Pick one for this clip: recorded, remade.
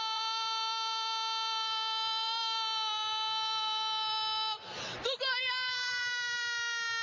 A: recorded